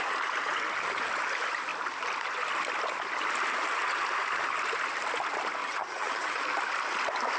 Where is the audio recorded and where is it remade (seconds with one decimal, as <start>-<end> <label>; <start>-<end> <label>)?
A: 0.0-5.6 recorded; 5.6-6.4 remade; 6.4-7.4 recorded